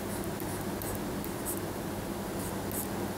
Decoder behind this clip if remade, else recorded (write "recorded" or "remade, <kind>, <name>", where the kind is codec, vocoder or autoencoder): recorded